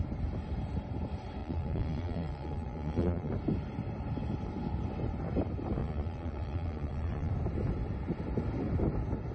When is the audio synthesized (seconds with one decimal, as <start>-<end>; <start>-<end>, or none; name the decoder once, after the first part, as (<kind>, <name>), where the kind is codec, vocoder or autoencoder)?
1.4-3.3 (vocoder, Vocos); 5.8-7.3